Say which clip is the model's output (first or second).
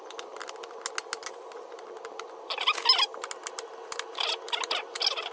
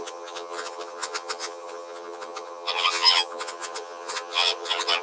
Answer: second